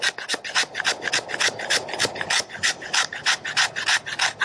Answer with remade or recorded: recorded